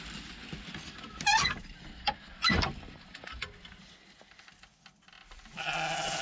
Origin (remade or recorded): recorded